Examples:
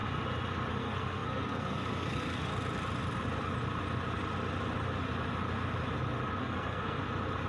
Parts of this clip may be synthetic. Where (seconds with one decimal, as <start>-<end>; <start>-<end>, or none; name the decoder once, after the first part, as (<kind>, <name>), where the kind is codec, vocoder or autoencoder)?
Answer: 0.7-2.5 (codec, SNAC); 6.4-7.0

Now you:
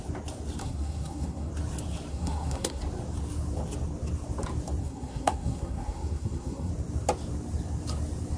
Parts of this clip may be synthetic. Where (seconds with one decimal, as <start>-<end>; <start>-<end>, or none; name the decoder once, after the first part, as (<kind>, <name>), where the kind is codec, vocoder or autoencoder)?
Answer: 0.6-1.5 (codec, SNAC); 2.1-2.8; 4.8-6.7

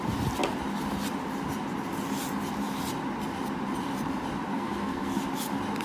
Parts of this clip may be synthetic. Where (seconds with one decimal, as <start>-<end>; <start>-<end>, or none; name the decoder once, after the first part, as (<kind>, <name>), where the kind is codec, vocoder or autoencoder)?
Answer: 4.5-5.2 (codec, SNAC)

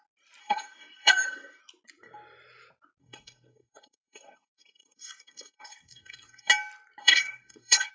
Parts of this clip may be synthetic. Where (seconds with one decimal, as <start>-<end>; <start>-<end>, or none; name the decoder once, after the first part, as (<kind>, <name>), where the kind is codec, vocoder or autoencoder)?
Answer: 0.4-1.6 (codec, SNAC); 3.0-6.5; 7.0-7.9